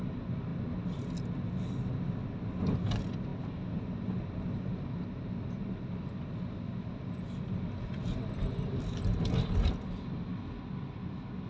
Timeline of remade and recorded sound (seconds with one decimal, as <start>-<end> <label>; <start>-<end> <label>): 0.0-11.5 recorded